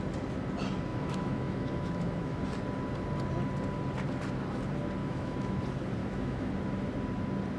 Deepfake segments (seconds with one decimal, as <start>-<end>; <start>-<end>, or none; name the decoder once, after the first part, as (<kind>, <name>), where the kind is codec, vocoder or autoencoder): 0.9-2.4 (autoencoder, DAC-VAE); 5.0-5.6; 6.0-6.5